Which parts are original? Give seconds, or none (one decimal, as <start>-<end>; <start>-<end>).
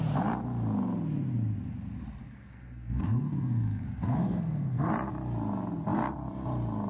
0.0-2.2; 4.9-6.9